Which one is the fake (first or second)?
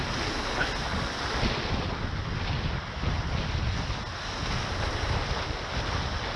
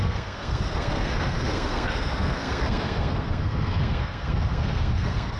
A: second